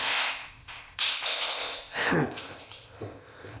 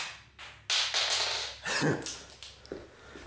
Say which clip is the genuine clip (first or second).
second